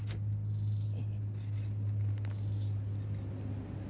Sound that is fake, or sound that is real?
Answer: real